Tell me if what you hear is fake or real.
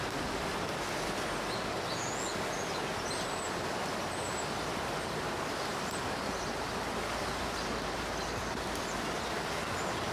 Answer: real